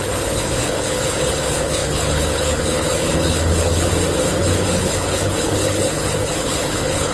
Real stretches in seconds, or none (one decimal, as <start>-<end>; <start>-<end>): 3.9-4.4